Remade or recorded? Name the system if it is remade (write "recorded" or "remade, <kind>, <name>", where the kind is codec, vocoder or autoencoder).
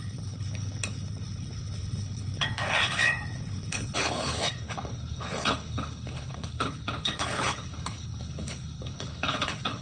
remade, codec, HILCodec